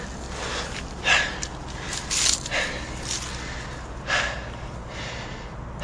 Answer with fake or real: real